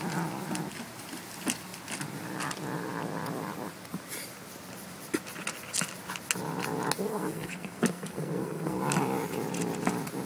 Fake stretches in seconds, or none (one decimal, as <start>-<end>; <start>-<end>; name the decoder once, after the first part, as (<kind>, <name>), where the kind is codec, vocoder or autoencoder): 7.1-8.8 (codec, SNAC)